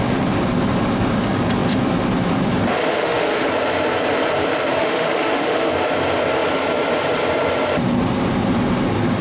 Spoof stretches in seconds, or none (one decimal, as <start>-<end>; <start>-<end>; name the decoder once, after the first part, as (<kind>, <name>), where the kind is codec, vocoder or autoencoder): 2.7-3.5 (autoencoder, DAC-VAE); 4.8-5.7